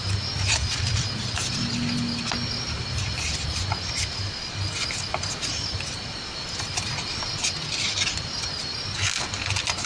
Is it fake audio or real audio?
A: real